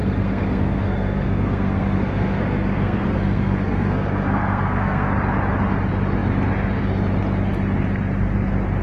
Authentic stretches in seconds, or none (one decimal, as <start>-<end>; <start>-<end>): 5.1-8.8